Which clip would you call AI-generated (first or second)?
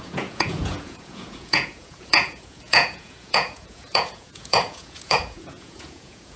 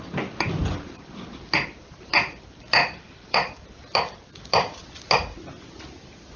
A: first